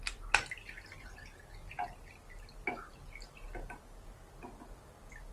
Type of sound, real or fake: real